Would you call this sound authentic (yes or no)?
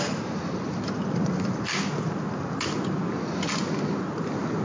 yes